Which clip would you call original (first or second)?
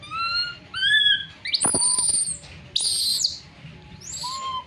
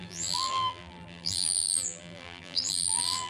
first